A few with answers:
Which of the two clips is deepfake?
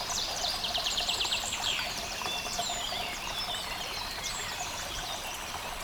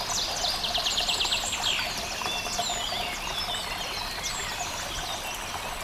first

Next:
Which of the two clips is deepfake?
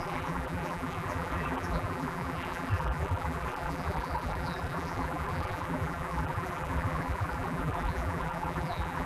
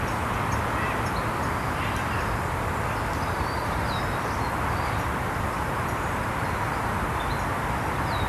first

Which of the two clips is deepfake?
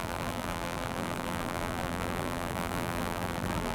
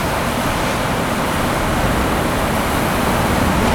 first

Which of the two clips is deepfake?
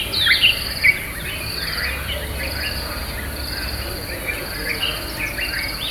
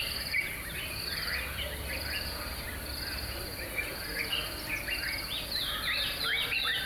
second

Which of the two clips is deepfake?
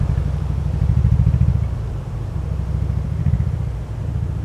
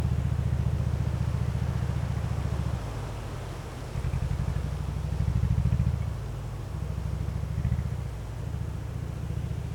first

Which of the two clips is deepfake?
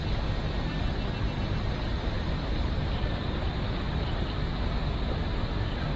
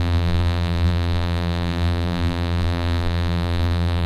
second